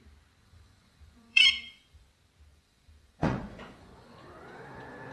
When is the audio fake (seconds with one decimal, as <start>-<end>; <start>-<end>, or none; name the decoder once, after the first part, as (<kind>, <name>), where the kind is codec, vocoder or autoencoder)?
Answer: 0.4-2.1 (vocoder, Vocos); 2.5-5.1